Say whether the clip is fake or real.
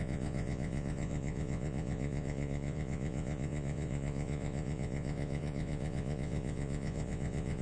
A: fake